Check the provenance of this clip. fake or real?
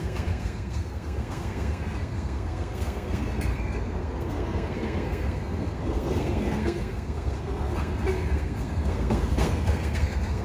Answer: fake